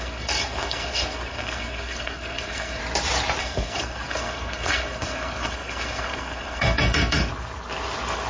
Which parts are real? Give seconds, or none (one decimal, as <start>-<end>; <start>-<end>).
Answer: 2.8-3.4; 7.3-8.3